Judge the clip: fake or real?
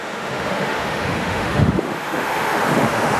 fake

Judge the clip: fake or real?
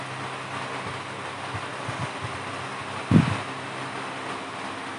real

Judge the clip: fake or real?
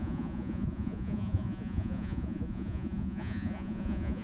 fake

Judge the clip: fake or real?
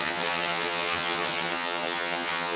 fake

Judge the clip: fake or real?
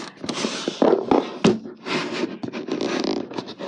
real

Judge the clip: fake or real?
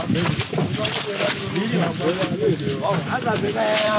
real